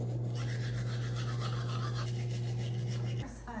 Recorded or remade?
recorded